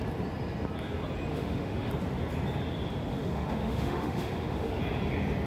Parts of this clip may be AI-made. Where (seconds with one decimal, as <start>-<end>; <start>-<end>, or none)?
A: 1.3-1.9; 3.1-4.8